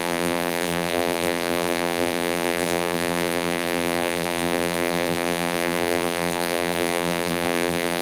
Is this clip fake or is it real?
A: fake